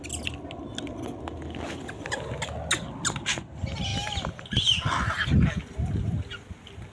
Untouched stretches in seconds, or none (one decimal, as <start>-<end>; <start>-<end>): 0.0-6.9